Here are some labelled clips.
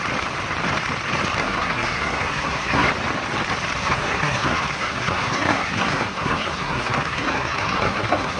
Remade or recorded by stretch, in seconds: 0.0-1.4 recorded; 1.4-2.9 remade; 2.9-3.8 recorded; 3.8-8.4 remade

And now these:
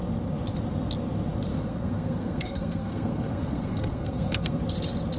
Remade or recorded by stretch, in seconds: 0.0-1.5 recorded; 1.5-4.6 remade; 4.6-5.2 recorded

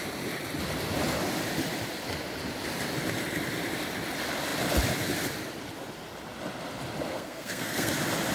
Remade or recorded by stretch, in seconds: 0.0-7.1 recorded; 7.1-7.9 remade; 7.9-8.3 recorded

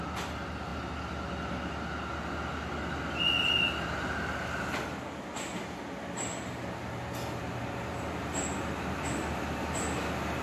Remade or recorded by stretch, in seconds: 0.0-10.4 recorded

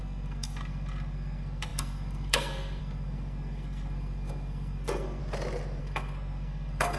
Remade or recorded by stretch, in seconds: 0.0-5.2 remade; 5.2-5.8 recorded; 5.8-7.0 remade

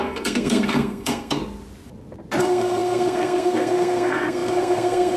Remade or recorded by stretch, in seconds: 0.0-1.4 remade; 1.4-2.4 recorded; 2.4-5.2 remade

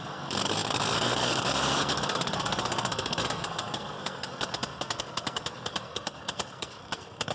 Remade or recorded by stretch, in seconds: 0.0-7.3 remade